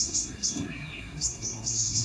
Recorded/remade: remade